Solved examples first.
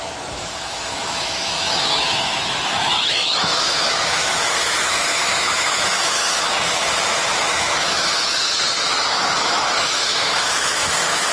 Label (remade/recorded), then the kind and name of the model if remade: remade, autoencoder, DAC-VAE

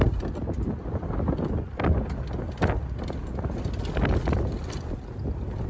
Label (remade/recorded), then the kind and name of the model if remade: recorded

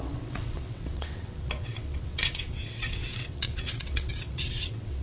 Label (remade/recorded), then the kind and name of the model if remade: remade, vocoder, WaveNeXt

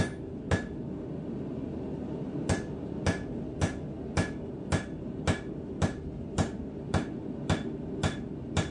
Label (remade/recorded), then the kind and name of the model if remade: recorded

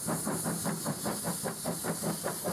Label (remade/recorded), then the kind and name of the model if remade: recorded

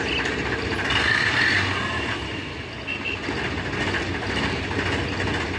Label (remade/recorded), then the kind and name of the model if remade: recorded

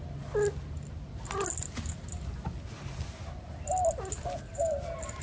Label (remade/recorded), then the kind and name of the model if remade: recorded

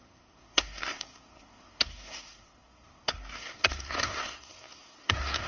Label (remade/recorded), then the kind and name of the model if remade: remade, codec, SNAC